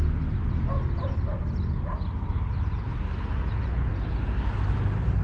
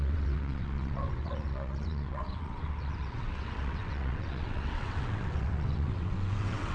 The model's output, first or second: second